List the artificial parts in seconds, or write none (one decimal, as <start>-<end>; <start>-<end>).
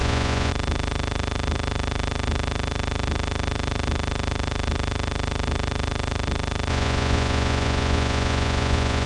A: 0.0-0.5; 6.7-9.1